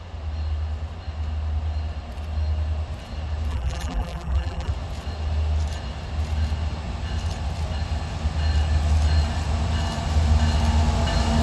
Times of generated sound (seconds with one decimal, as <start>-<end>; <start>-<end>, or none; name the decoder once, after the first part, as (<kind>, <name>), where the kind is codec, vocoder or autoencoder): 3.5-4.7 (vocoder, BigVGAN v2)